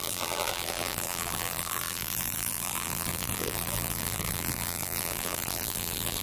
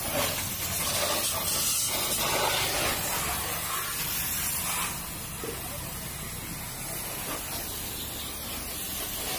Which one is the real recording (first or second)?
second